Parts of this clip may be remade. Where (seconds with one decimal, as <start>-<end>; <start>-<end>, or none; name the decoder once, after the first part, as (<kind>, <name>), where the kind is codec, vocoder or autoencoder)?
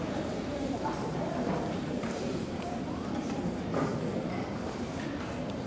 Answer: 0.5-3.4 (vocoder, BigVGAN v2)